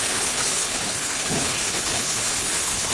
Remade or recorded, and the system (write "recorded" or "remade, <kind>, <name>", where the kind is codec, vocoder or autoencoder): remade, codec, HILCodec